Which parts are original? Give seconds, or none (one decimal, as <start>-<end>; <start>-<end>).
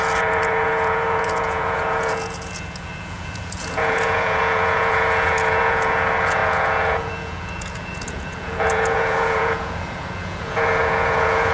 none